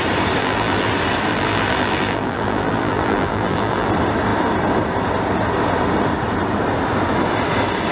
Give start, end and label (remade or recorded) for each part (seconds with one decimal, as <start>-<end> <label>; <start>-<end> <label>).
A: 0.0-0.4 recorded; 0.4-0.9 remade; 0.9-1.3 recorded; 1.3-3.9 remade; 3.9-7.9 recorded